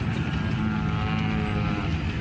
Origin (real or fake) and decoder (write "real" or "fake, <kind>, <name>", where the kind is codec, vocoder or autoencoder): real